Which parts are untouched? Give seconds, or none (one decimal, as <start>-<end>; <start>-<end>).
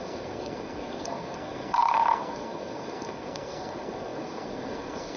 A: none